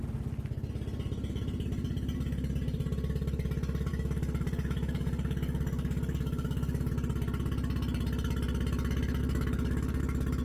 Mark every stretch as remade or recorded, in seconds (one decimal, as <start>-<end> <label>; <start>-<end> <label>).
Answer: 0.0-3.9 recorded; 3.9-6.9 remade; 6.9-9.2 recorded; 9.2-10.0 remade; 10.0-10.4 recorded